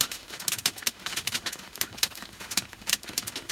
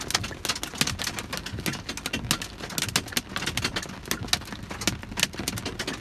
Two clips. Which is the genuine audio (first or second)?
second